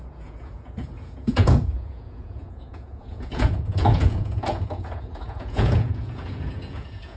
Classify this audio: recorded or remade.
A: remade